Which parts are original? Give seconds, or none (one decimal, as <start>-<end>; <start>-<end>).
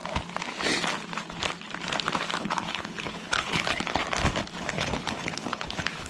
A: 0.0-2.4; 4.0-4.6